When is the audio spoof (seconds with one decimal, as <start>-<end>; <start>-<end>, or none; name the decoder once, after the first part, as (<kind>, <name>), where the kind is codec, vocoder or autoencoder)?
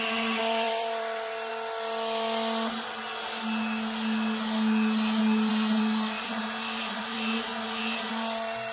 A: 0.0-1.5 (vocoder, BigVGAN v2); 5.5-7.5; 8.1-8.7